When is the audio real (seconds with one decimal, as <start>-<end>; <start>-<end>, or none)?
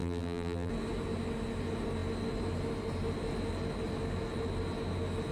0.7-5.3